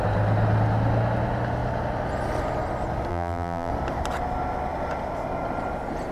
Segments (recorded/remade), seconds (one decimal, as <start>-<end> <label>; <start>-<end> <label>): 0.0-3.1 recorded; 3.1-3.7 remade; 3.7-6.1 recorded